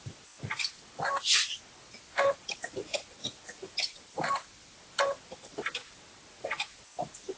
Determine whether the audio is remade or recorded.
recorded